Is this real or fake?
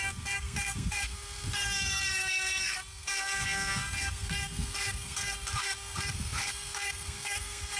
fake